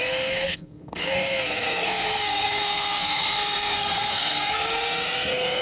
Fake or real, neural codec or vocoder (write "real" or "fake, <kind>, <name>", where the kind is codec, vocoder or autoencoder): fake, codec, SNAC